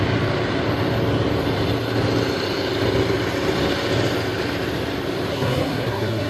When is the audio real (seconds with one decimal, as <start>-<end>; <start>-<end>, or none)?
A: 0.0-5.3